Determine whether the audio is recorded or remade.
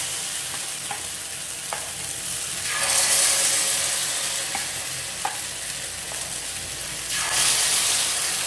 recorded